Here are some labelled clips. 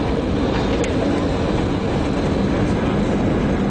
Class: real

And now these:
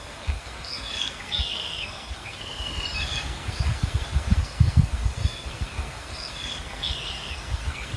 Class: fake